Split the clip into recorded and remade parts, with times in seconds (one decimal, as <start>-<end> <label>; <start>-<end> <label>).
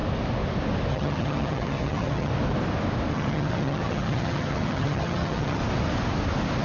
0.0-0.9 recorded; 0.9-2.3 remade; 2.3-3.1 recorded; 3.1-5.6 remade; 5.6-6.6 recorded